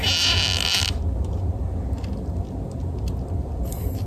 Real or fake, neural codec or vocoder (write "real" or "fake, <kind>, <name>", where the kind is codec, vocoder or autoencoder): real